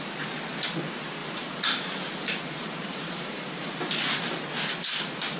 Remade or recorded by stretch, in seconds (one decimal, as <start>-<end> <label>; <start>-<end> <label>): 0.0-1.2 recorded; 1.2-4.2 remade; 4.2-5.4 recorded